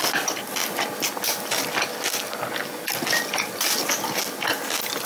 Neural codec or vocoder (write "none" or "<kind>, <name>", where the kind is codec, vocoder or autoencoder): none